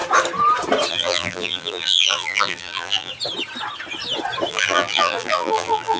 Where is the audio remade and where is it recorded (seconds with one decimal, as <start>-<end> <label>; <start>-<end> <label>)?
0.0-0.9 recorded; 0.9-3.1 remade; 3.1-4.5 recorded; 4.5-6.0 remade